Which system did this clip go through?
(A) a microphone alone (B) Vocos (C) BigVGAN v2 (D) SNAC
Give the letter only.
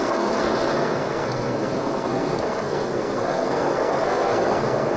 D